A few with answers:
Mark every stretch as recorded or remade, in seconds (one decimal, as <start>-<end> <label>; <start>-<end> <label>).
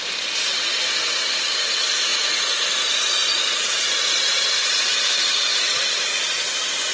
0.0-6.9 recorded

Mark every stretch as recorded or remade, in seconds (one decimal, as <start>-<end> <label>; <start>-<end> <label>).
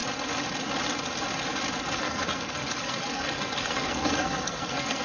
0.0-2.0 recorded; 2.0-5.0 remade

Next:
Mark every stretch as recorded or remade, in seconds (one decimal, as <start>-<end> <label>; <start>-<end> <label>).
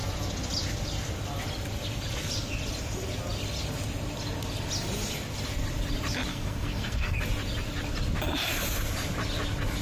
0.0-6.3 recorded; 6.3-7.2 remade; 7.2-9.8 recorded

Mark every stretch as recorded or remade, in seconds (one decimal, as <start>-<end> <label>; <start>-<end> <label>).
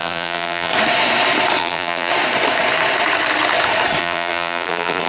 0.0-0.7 remade; 0.7-1.6 recorded; 1.6-2.1 remade; 2.1-4.0 recorded; 4.0-5.1 remade